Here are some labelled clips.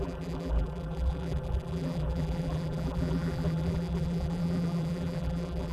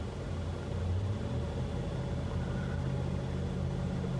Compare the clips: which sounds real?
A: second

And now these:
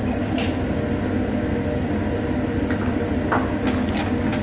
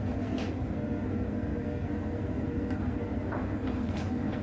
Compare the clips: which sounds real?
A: first